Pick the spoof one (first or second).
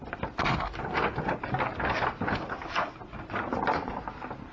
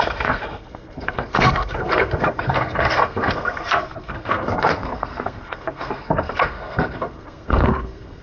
second